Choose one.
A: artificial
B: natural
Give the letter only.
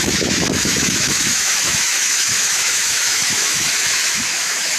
A